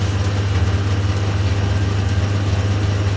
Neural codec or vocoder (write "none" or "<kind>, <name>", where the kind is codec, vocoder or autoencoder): none